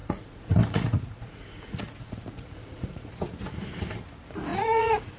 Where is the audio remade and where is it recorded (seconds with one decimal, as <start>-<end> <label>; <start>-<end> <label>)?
0.0-3.1 remade; 3.1-4.5 recorded; 4.5-5.2 remade